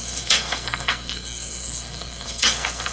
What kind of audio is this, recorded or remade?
remade